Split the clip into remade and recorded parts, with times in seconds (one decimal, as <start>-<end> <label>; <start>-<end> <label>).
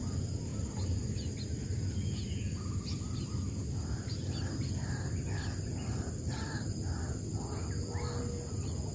0.0-8.9 recorded